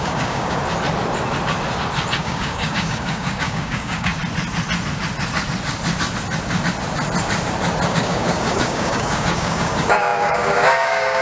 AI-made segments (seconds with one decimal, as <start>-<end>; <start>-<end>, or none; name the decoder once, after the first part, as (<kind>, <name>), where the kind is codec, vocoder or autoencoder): 0.0-0.6 (codec, DAC); 2.2-4.2; 7.9-11.2